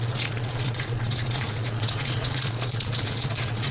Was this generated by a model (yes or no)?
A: yes